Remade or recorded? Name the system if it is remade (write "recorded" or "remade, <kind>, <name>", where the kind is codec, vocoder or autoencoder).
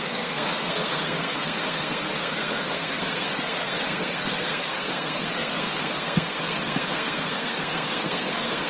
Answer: remade, codec, SNAC